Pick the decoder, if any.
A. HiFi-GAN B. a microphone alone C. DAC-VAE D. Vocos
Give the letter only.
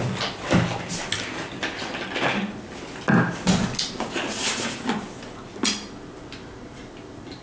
B